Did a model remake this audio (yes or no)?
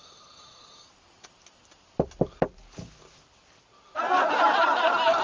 no